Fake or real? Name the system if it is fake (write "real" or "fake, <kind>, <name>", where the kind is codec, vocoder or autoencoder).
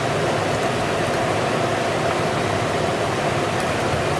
real